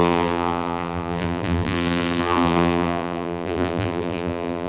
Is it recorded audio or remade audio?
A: remade